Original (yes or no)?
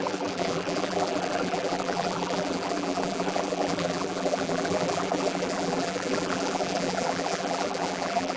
no